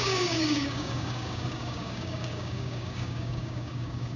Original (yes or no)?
no